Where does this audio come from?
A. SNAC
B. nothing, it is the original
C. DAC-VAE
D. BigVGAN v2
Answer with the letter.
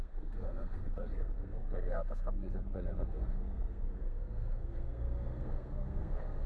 A